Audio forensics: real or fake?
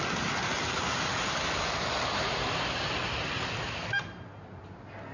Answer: real